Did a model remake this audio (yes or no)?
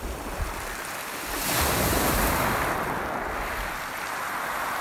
no